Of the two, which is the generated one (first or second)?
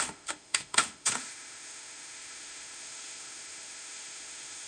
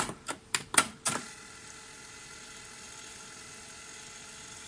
first